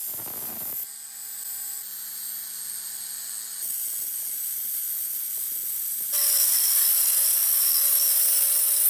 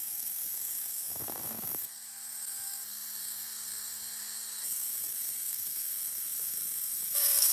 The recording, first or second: first